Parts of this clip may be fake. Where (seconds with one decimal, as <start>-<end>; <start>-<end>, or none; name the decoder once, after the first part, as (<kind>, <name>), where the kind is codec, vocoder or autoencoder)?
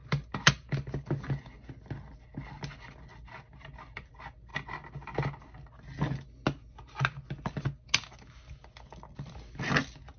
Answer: 0.0-0.5 (vocoder, BigVGAN v2)